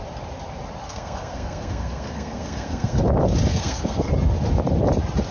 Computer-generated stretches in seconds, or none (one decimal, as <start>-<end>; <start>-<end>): 0.8-3.0; 3.5-4.1